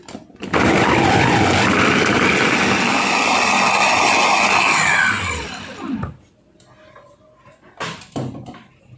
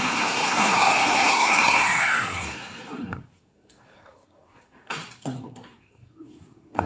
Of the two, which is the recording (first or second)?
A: first